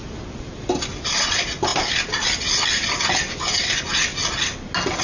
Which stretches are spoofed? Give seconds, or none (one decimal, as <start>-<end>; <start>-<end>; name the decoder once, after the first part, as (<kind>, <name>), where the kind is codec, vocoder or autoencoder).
none